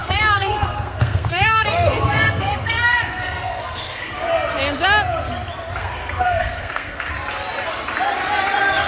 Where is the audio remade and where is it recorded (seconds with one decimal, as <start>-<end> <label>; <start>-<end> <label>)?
0.0-4.2 remade; 4.2-5.8 recorded; 5.8-7.1 remade; 7.1-8.9 recorded